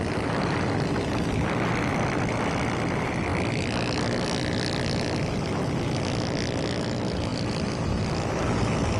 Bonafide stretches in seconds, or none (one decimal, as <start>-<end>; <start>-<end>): 0.0-9.0